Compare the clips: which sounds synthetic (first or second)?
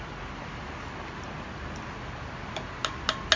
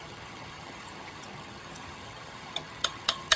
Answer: second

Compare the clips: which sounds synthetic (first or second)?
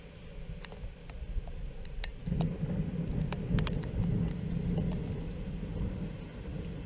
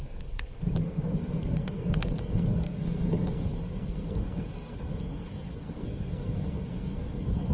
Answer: second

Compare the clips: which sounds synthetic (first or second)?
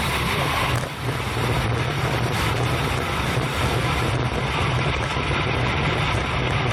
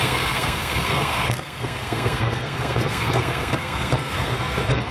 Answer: second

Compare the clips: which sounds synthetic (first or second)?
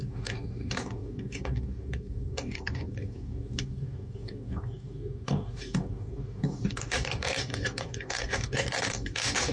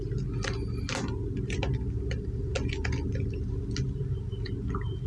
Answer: first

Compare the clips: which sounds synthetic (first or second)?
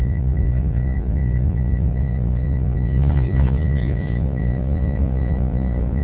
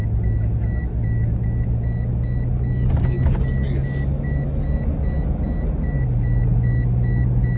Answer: first